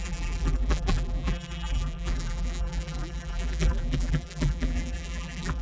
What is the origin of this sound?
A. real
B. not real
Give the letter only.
B